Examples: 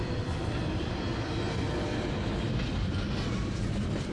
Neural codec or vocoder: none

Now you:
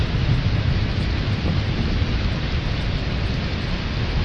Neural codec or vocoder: none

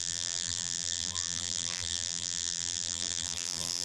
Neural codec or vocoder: vocoder, BigVGAN v2